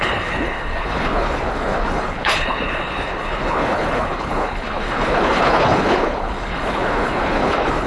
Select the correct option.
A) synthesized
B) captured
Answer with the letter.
A